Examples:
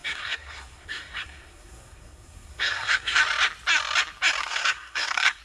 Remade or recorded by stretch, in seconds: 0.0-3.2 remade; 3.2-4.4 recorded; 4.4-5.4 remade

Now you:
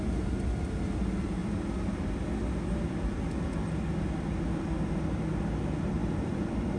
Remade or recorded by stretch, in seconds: 0.0-6.0 recorded; 6.0-6.8 remade

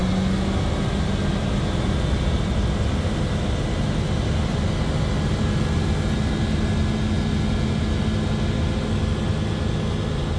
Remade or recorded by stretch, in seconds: 0.0-10.4 recorded

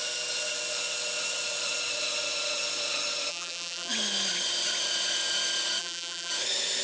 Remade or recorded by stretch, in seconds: 0.0-3.3 recorded; 3.3-3.9 remade; 3.9-5.8 recorded; 5.8-6.3 remade; 6.3-6.8 recorded

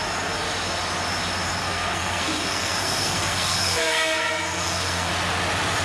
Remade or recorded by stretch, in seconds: 0.0-1.6 recorded; 1.6-5.1 remade; 5.1-5.8 recorded

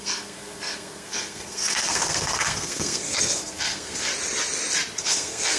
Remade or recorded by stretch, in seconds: 0.0-4.1 remade; 4.1-5.0 recorded; 5.0-5.6 remade

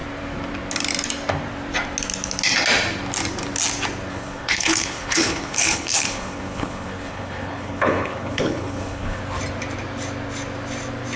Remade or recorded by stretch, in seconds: 0.0-4.1 recorded; 4.1-9.2 remade; 9.2-11.2 recorded